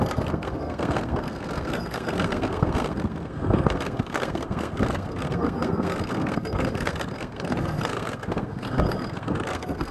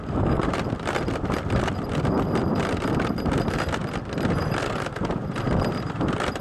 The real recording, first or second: second